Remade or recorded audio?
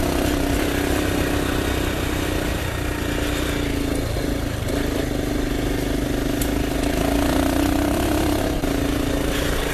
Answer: recorded